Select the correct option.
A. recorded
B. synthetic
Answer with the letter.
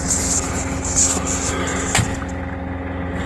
A